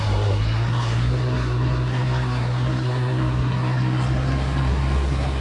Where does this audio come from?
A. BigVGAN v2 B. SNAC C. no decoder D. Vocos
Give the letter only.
B